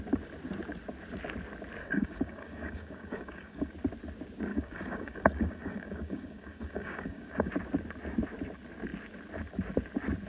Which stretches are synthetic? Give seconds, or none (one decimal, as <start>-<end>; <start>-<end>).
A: 1.8-3.7; 4.5-7.5